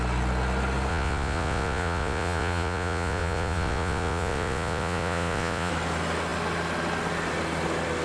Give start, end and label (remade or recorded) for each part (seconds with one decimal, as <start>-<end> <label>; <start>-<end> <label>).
0.0-0.9 recorded; 0.9-5.7 remade; 5.7-8.0 recorded